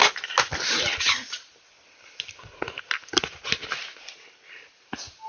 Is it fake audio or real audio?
real